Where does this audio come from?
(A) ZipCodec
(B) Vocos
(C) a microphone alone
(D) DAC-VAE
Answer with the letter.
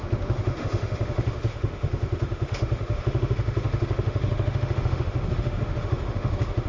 D